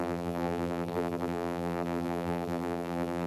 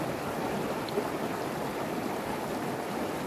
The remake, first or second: first